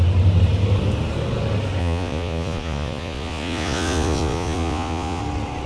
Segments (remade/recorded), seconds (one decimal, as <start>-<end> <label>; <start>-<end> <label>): 0.0-1.8 recorded; 1.8-5.2 remade; 5.2-5.7 recorded